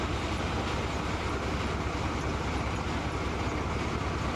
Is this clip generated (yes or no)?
no